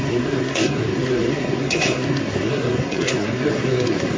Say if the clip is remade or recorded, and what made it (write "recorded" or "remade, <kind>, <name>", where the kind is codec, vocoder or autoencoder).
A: remade, codec, SNAC